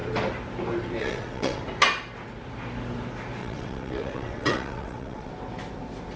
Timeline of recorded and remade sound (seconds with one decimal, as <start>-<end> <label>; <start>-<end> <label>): 0.0-1.0 recorded; 1.0-1.6 remade; 1.6-3.4 recorded; 3.4-5.3 remade; 5.3-6.2 recorded